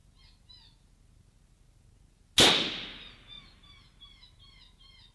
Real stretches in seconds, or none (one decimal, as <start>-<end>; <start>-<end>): 0.0-5.1